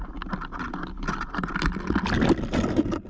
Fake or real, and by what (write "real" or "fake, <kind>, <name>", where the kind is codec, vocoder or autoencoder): real